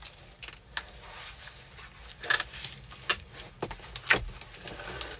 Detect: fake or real real